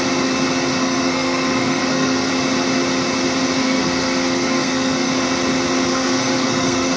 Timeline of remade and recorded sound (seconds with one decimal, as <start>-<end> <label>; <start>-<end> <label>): 0.0-0.8 recorded; 0.8-2.3 remade; 2.3-3.6 recorded; 3.6-5.1 remade; 5.1-5.9 recorded; 5.9-7.0 remade

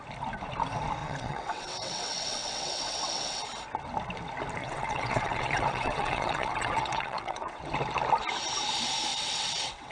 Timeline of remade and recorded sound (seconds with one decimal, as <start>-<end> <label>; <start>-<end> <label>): 0.0-1.0 recorded; 1.0-3.4 remade; 3.4-4.6 recorded; 4.6-7.6 remade; 7.6-9.1 recorded; 9.1-9.9 remade

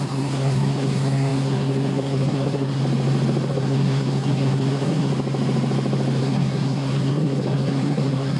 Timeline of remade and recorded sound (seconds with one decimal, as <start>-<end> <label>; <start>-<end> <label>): 0.0-2.8 remade; 2.8-3.5 recorded; 3.5-5.1 remade; 5.1-6.2 recorded; 6.2-8.4 remade

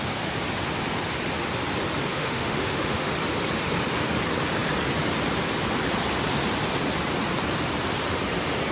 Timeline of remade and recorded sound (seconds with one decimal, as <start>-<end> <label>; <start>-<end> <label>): 0.0-2.1 recorded; 2.1-3.1 remade; 3.1-8.7 recorded

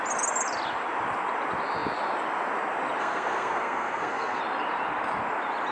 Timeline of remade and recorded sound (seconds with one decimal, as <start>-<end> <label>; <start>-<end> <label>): 0.0-3.0 recorded; 3.0-4.4 remade; 4.4-5.7 recorded

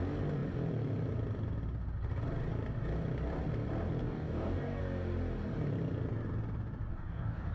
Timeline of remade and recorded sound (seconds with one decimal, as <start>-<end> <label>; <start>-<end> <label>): 0.0-4.0 recorded; 4.0-4.8 remade; 4.8-6.9 recorded; 6.9-7.5 remade

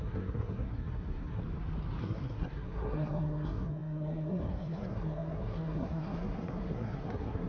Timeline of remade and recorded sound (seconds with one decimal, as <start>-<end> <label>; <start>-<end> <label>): 0.0-1.4 remade; 1.4-2.0 recorded; 2.0-7.5 remade

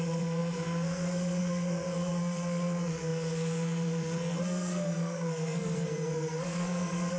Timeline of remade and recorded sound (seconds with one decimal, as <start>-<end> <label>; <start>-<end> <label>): 0.0-7.2 remade